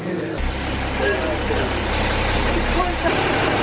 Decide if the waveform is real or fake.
real